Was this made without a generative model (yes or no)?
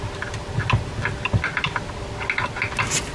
yes